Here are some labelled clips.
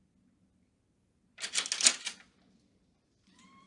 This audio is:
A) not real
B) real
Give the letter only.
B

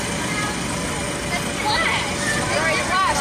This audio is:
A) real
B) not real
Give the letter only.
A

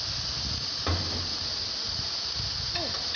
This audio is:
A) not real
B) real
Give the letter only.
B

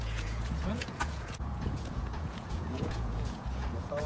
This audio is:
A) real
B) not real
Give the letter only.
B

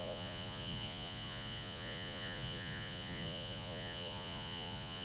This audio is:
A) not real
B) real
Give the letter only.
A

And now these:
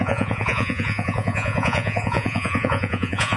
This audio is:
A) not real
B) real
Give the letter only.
A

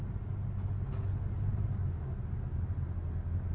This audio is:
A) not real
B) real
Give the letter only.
B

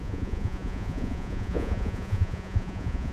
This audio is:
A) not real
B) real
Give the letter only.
A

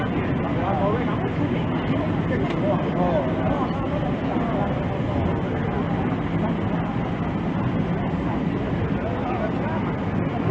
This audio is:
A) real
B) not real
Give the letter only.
A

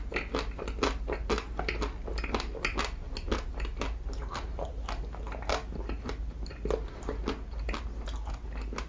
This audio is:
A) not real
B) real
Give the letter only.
B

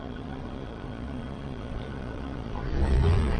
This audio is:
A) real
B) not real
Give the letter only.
B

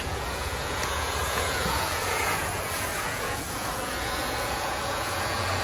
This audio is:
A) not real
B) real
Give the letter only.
A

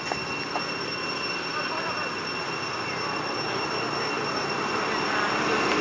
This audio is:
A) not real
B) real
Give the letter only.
B